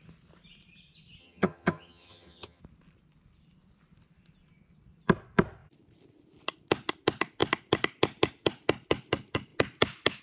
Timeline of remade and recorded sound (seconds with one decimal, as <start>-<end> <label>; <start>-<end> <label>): 0.0-1.2 recorded; 1.2-2.6 remade; 2.6-10.2 recorded